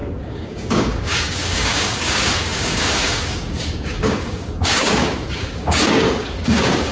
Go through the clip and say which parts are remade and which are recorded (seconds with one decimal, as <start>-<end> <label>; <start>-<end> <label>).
0.0-6.9 remade